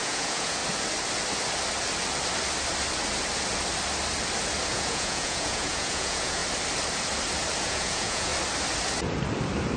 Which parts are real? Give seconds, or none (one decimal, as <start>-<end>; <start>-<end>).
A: 0.6-4.7; 6.4-7.6; 8.3-9.8